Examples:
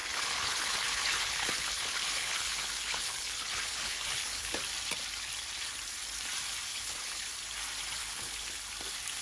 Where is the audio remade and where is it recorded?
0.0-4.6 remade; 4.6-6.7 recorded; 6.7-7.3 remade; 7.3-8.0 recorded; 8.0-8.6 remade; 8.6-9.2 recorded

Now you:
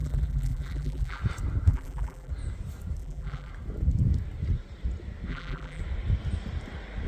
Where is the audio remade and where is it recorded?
0.0-1.2 remade; 1.2-1.7 recorded; 1.7-2.3 remade; 2.3-3.0 recorded; 3.0-3.5 remade; 3.5-5.3 recorded; 5.3-5.8 remade; 5.8-7.1 recorded

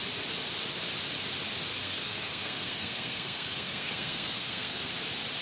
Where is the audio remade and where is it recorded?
0.0-1.7 recorded; 1.7-4.9 remade; 4.9-5.4 recorded

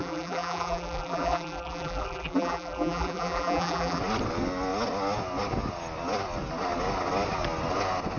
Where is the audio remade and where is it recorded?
0.0-4.0 remade; 4.0-8.2 recorded

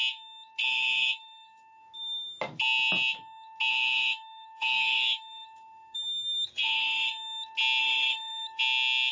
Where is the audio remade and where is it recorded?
0.0-0.6 recorded; 0.6-1.8 remade; 1.8-3.7 recorded; 3.7-7.1 remade; 7.1-7.8 recorded; 7.8-8.6 remade; 8.6-9.1 recorded